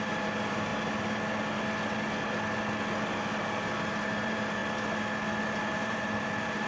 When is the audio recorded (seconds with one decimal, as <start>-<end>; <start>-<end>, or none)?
0.7-3.9; 4.6-5.6